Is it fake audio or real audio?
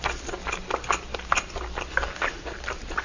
real